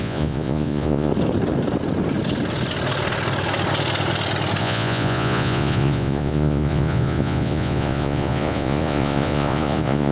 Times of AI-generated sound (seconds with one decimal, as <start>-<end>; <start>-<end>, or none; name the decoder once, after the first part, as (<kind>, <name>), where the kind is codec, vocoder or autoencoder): 0.0-1.1 (vocoder, Vocos); 4.6-10.1